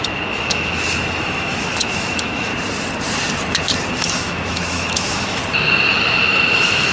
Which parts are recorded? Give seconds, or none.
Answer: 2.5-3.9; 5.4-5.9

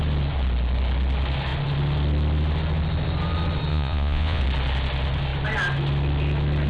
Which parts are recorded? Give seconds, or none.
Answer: 0.0-3.7; 4.4-6.7